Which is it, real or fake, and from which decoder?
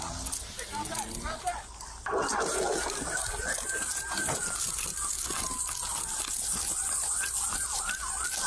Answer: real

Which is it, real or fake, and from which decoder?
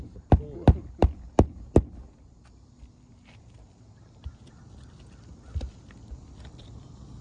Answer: real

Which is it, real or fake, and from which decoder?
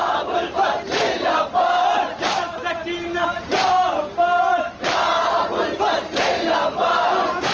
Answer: fake, vocoder, BigVGAN v2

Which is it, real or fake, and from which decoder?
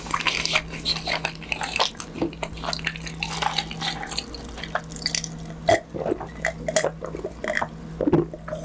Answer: real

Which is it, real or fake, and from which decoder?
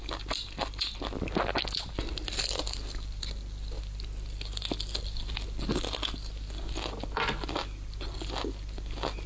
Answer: real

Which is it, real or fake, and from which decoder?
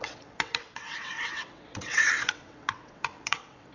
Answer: fake, vocoder, WaveNeXt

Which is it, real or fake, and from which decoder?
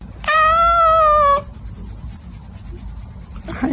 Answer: real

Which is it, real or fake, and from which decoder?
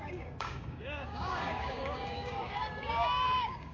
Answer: fake, codec, DAC